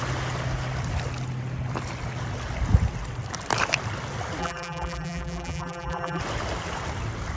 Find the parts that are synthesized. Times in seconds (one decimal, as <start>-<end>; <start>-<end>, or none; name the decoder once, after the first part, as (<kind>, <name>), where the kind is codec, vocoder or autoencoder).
4.4-6.2 (vocoder, BigVGAN v2)